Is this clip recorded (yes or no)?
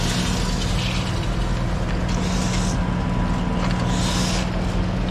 yes